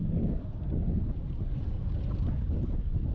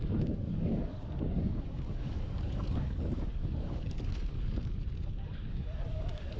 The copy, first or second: second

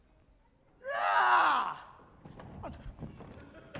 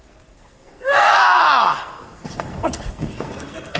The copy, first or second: second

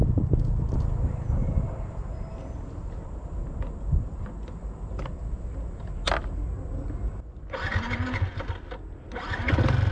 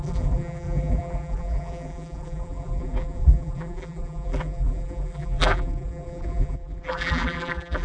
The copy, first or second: second